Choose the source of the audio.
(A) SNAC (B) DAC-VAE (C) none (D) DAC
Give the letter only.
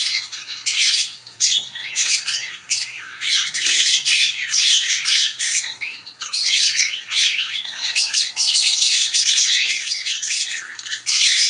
A